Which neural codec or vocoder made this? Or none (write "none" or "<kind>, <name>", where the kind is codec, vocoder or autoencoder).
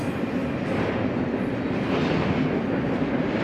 none